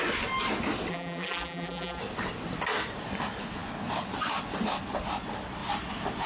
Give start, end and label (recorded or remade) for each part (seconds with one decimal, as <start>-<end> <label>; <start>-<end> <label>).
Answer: 0.0-0.9 recorded; 0.9-2.0 remade; 2.0-6.3 recorded